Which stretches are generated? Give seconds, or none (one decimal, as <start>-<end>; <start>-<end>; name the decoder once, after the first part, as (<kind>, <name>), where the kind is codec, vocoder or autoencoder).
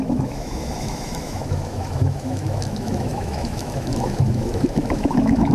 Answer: 0.0-5.5 (autoencoder, DAC-VAE)